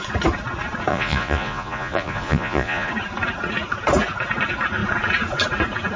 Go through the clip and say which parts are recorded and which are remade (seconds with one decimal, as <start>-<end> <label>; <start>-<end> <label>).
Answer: 0.0-0.9 recorded; 0.9-2.9 remade; 2.9-6.0 recorded